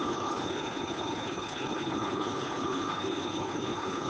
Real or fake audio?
fake